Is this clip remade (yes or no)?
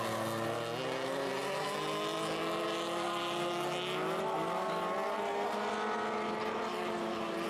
no